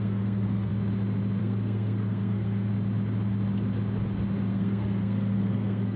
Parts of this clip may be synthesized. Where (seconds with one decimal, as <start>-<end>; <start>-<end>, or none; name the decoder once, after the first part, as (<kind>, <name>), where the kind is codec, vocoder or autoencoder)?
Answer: 0.0-0.7 (codec, SNAC); 1.4-2.7; 4.5-6.0